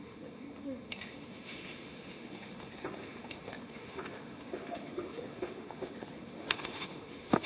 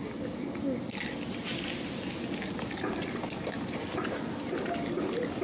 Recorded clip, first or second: second